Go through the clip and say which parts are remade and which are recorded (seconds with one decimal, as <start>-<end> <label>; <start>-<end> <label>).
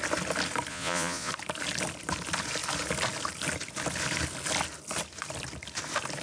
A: 0.0-0.7 recorded; 0.7-1.3 remade; 1.3-6.2 recorded